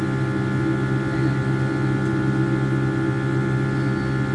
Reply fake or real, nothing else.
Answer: real